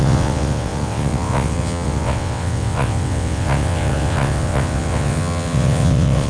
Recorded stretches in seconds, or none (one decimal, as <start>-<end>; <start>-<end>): none